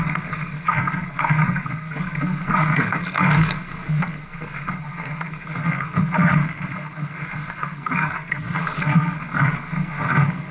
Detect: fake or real fake